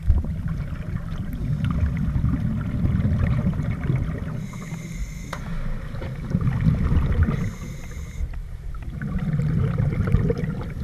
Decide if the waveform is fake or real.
real